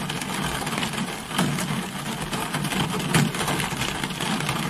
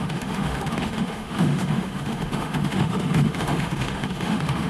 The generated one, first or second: second